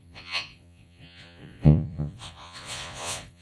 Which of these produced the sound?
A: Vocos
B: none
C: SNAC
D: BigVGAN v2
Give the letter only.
A